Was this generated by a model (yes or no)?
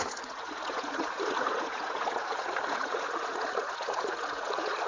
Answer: yes